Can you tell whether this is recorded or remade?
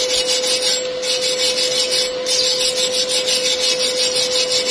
recorded